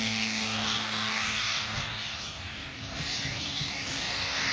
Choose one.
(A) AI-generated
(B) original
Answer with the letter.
A